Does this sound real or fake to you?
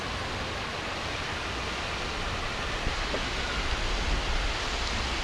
real